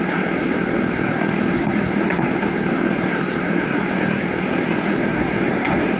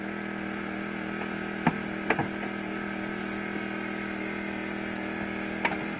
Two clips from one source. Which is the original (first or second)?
second